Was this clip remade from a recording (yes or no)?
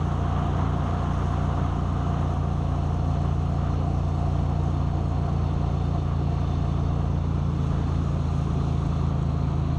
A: no